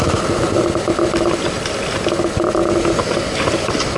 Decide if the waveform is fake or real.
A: real